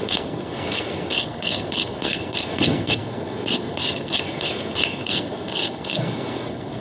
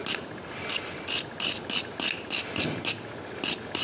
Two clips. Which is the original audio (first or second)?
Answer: second